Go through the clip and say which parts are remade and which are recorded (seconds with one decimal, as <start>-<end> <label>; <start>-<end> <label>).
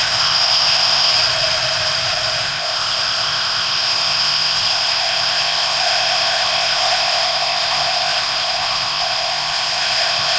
0.0-1.1 remade; 1.1-2.4 recorded; 2.4-10.4 remade